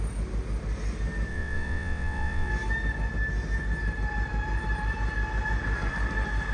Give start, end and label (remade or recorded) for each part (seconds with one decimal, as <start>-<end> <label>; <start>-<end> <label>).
0.0-1.3 recorded; 1.3-2.5 remade; 2.5-6.5 recorded